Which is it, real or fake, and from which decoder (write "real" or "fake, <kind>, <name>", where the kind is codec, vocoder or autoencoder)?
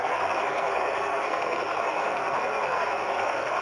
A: fake, codec, SNAC